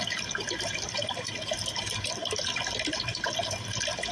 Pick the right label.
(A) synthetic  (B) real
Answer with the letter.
B